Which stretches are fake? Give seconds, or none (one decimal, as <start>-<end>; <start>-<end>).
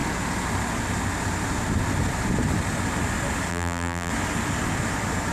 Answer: 3.5-4.1